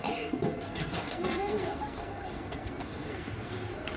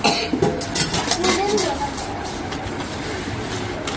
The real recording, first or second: second